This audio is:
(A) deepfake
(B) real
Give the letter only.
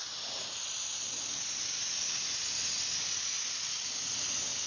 B